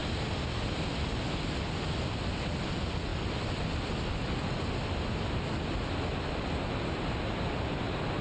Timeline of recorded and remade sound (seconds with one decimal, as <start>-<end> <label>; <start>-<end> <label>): 0.0-8.2 recorded